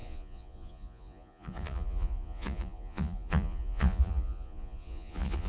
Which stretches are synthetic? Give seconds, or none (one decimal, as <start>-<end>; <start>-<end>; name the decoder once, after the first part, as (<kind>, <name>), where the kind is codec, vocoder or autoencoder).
0.0-5.5 (vocoder, Vocos)